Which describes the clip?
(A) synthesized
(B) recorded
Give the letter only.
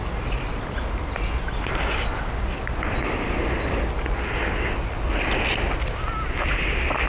B